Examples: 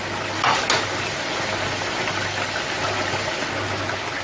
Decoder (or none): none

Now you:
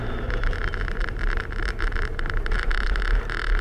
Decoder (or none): vocoder, BigVGAN v2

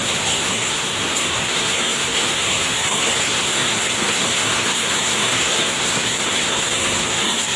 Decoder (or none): codec, SNAC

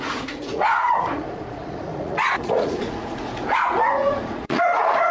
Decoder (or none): vocoder, Vocos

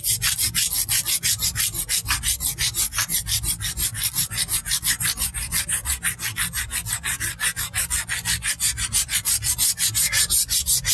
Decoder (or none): none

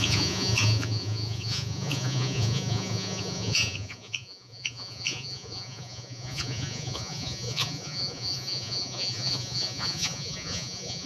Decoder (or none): vocoder, Vocos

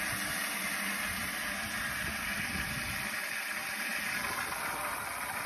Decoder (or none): none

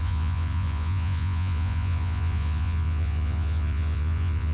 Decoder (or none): vocoder, Vocos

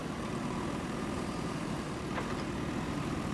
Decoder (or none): vocoder, BigVGAN v2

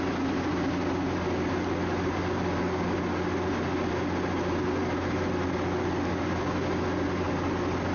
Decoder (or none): none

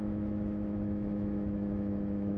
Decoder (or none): autoencoder, DAC-VAE